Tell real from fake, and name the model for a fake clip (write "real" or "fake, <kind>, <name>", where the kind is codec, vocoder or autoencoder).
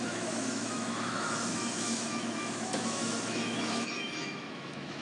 fake, autoencoder, DAC-VAE